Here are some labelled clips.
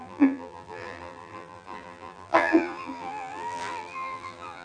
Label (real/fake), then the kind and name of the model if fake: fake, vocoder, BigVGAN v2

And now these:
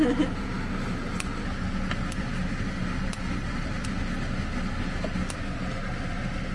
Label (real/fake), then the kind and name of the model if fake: real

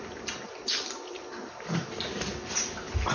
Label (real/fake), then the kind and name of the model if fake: real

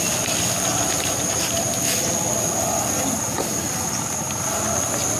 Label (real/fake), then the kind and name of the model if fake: real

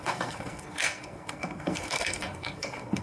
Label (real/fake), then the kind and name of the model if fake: fake, codec, SNAC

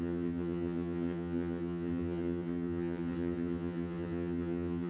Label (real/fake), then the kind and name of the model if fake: fake, vocoder, HiFi-GAN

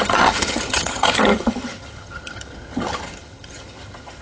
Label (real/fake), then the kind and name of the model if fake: fake, vocoder, HiFi-GAN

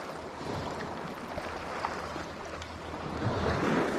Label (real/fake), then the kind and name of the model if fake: real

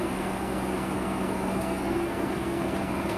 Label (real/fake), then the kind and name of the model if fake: fake, codec, SNAC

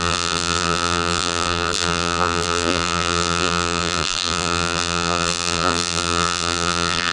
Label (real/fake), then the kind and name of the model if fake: fake, vocoder, BigVGAN v2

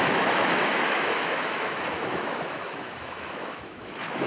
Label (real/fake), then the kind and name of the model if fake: fake, autoencoder, DAC-VAE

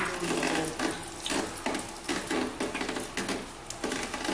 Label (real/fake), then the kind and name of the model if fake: real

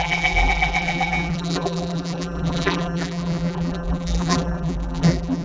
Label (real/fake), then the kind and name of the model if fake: fake, vocoder, BigVGAN v2